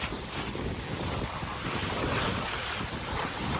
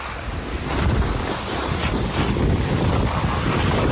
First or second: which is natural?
second